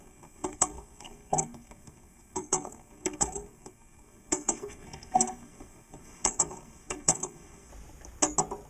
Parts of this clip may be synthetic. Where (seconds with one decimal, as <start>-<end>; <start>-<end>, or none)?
0.0-7.7